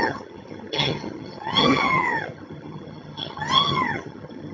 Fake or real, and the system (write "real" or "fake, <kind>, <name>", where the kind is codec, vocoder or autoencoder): fake, vocoder, HiFi-GAN